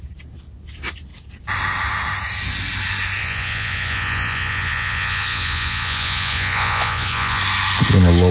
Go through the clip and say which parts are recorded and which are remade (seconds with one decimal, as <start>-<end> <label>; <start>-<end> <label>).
0.0-3.2 recorded; 3.2-7.4 remade; 7.4-8.3 recorded